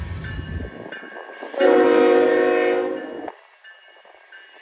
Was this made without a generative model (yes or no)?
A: yes